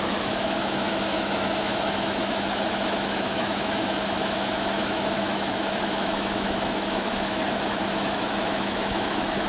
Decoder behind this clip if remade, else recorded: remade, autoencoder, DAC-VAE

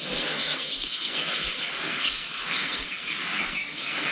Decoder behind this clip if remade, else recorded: remade, codec, SNAC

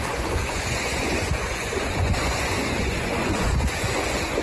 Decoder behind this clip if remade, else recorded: remade, vocoder, Vocos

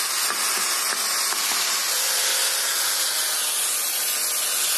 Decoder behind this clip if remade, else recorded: recorded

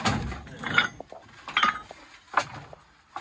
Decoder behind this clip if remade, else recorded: recorded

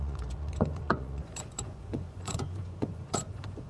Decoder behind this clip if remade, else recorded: remade, vocoder, Vocos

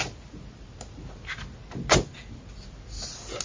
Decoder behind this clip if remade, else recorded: recorded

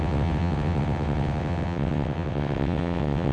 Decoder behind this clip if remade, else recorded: remade, vocoder, WaveNeXt